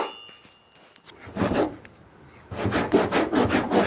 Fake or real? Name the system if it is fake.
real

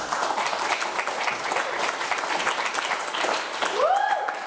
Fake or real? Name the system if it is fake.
real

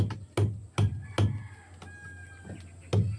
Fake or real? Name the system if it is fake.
real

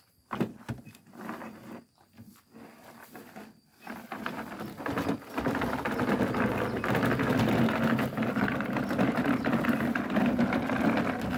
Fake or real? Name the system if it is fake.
real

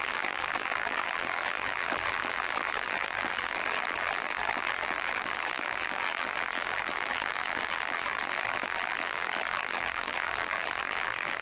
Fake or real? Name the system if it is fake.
fake, vocoder, BigVGAN v2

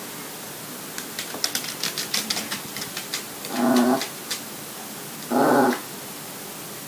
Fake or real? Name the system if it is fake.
real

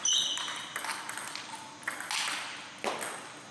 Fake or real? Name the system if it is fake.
real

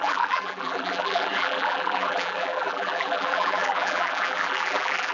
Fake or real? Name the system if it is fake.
fake, vocoder, BigVGAN v2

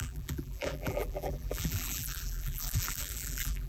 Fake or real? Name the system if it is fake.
fake, vocoder, BigVGAN v2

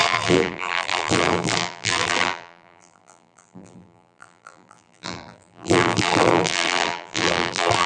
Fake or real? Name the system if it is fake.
fake, vocoder, BigVGAN v2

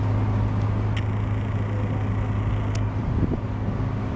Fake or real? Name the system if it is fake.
real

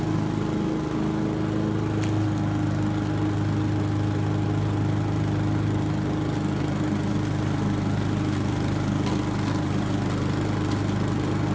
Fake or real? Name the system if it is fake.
real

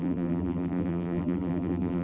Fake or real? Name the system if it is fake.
fake, vocoder, BigVGAN v2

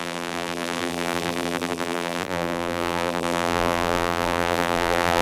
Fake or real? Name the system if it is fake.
fake, vocoder, BigVGAN v2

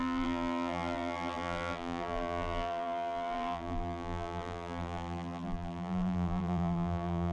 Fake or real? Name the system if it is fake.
fake, vocoder, BigVGAN v2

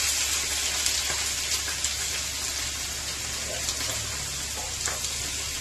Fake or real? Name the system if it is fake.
real